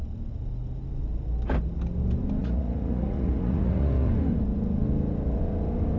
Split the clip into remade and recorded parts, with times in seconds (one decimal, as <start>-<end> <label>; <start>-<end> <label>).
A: 0.0-2.4 recorded; 2.4-4.1 remade; 4.1-6.0 recorded

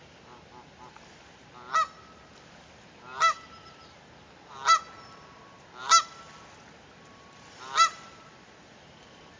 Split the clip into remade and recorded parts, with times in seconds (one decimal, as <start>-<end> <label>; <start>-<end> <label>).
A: 0.0-9.4 recorded

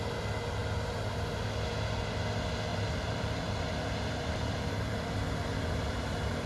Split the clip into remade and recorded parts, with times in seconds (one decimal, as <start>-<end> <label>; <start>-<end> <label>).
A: 0.0-2.7 recorded; 2.7-5.1 remade; 5.1-6.5 recorded

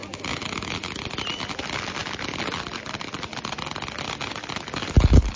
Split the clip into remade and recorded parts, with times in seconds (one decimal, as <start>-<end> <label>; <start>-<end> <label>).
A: 0.0-1.0 remade; 1.0-5.4 recorded